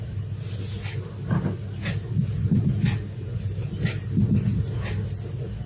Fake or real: real